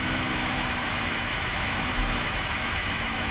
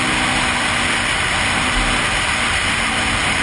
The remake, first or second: first